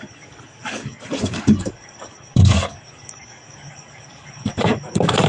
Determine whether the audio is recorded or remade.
remade